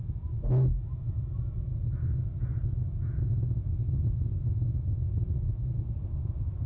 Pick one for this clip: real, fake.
real